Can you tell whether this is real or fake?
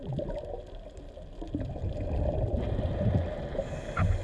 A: real